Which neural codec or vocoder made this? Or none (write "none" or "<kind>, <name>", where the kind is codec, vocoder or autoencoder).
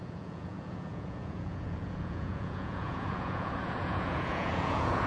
vocoder, Vocos